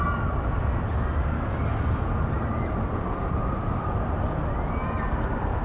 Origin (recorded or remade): recorded